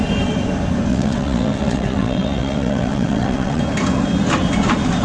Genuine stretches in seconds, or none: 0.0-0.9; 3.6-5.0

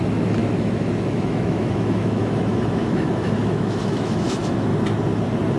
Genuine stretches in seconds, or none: 4.7-5.6

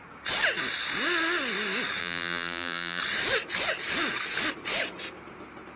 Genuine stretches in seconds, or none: 0.0-2.0; 3.0-5.8